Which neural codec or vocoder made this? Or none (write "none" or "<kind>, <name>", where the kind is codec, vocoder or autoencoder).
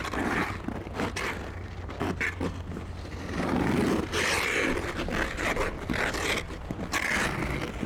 none